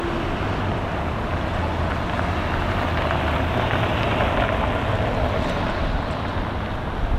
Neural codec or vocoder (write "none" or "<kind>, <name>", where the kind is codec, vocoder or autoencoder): none